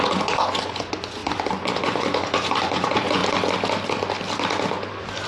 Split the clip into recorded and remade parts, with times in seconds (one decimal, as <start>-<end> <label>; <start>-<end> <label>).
0.0-3.2 remade; 3.2-5.3 recorded